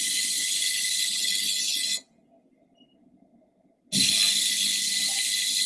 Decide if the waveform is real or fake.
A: real